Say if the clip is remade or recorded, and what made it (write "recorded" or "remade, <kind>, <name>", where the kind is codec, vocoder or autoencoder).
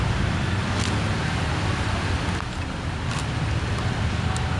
recorded